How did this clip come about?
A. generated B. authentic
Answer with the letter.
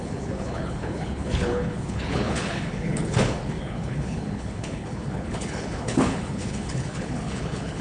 A